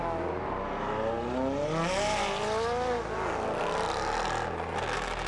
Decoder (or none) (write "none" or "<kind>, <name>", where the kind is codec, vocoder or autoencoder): none